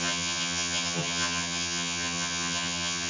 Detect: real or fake fake